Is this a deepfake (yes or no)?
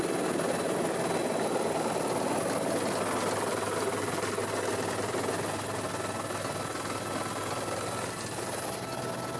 no